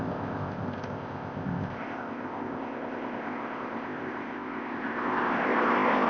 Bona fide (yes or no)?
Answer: no